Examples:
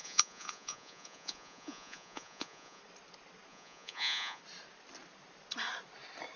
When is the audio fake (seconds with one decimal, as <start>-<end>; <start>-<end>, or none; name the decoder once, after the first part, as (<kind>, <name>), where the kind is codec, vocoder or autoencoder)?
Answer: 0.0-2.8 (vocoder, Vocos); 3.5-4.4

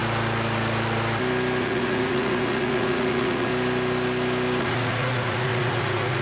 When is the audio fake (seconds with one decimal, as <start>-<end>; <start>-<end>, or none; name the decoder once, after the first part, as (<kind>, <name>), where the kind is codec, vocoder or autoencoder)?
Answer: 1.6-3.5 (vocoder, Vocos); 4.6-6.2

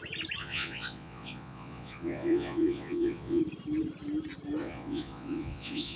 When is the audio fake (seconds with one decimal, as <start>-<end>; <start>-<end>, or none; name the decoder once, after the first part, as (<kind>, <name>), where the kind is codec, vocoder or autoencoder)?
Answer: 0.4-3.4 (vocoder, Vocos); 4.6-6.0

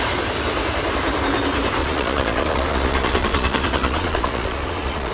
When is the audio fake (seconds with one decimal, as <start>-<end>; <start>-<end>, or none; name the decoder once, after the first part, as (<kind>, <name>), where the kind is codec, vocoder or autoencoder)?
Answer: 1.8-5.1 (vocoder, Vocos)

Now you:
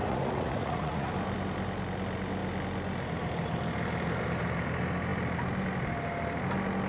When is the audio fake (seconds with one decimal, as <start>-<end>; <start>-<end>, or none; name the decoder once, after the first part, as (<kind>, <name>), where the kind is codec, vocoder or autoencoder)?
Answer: 0.0-1.1 (vocoder, Vocos)

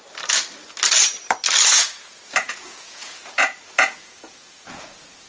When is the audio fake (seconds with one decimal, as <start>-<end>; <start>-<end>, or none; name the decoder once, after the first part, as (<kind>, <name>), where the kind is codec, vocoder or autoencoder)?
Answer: 1.7-5.3 (vocoder, Vocos)